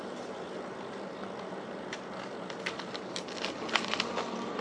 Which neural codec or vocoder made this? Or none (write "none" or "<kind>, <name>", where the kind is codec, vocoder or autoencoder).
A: none